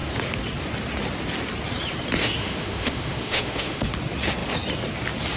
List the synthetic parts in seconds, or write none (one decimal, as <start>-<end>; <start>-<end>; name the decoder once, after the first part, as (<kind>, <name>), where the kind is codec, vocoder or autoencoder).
2.2-3.9 (autoencoder, DAC-VAE)